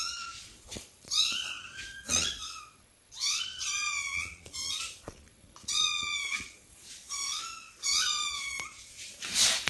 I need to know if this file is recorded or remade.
remade